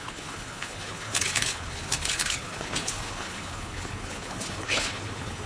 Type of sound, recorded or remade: remade